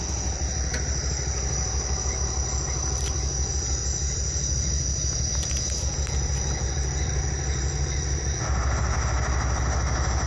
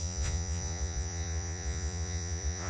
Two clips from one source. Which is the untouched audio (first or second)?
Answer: first